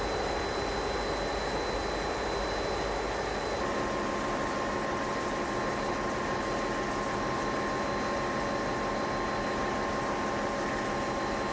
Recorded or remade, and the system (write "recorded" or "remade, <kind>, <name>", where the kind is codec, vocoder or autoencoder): recorded